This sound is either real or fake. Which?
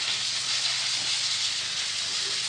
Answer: real